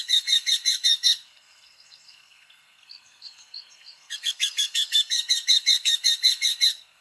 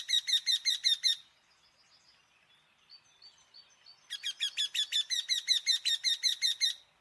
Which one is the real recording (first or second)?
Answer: second